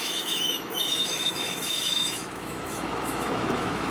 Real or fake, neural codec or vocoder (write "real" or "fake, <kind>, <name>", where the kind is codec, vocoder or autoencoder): fake, autoencoder, DAC-VAE